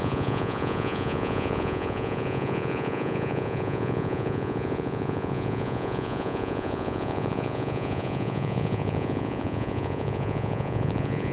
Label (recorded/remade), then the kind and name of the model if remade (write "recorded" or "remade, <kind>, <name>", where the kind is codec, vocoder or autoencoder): remade, vocoder, Vocos